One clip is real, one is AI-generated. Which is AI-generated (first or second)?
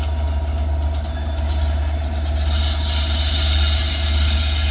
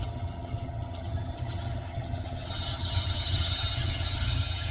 second